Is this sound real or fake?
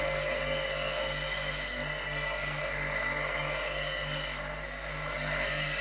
fake